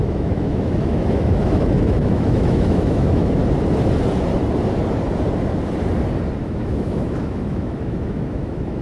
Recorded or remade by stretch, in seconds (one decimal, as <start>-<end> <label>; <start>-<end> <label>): 0.0-3.4 remade; 3.4-6.4 recorded; 6.4-8.8 remade